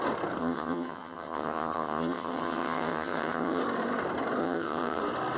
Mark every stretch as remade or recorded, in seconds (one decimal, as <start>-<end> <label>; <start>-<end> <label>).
0.0-0.4 recorded; 0.4-3.6 remade; 3.6-4.4 recorded; 4.4-5.0 remade; 5.0-5.4 recorded